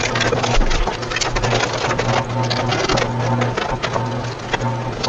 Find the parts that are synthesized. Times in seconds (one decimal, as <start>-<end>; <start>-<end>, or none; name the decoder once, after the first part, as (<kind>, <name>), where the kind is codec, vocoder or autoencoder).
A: none